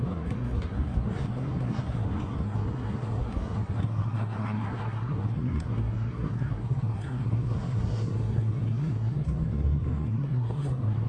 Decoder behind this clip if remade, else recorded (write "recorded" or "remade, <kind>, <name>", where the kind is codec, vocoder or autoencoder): remade, codec, SNAC